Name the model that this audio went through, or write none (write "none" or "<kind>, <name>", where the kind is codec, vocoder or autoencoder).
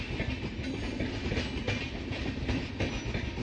none